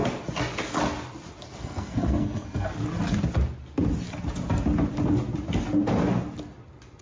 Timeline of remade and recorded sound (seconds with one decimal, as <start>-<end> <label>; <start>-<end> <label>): 0.0-1.6 recorded; 1.6-2.7 remade; 2.7-7.0 recorded